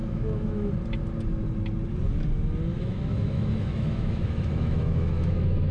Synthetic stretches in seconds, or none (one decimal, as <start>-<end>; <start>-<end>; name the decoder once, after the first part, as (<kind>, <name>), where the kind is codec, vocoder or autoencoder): 0.0-0.7 (autoencoder, DAC-VAE); 2.7-5.7